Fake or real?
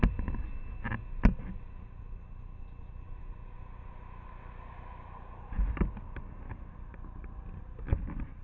real